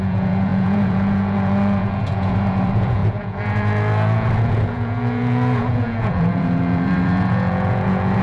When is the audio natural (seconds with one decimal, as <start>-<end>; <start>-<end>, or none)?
none